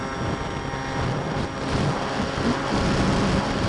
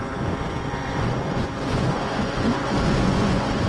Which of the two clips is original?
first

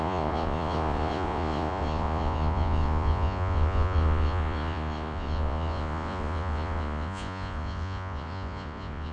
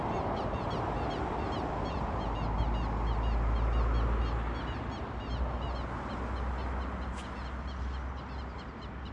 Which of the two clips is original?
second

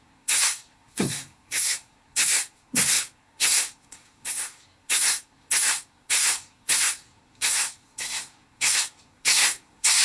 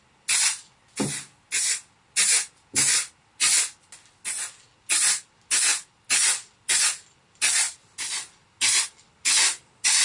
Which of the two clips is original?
second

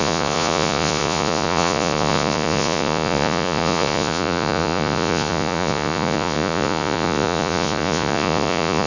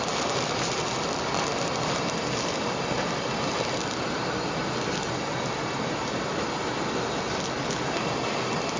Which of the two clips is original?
second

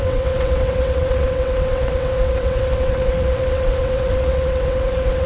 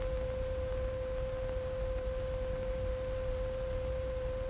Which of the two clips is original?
second